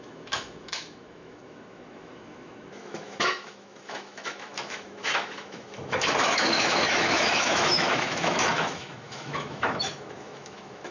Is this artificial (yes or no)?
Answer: yes